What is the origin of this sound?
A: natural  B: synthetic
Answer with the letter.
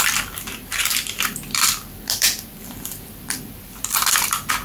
B